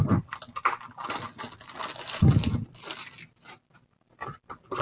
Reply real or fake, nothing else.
real